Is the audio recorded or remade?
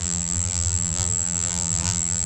remade